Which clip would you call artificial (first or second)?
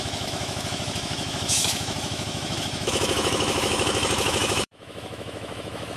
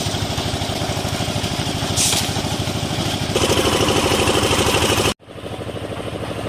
first